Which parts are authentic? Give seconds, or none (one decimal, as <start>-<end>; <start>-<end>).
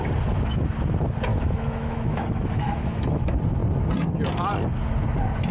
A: 0.0-1.3; 3.2-5.5